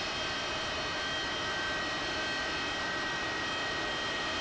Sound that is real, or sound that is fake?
real